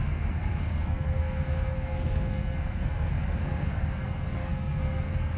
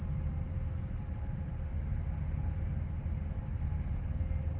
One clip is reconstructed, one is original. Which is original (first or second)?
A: second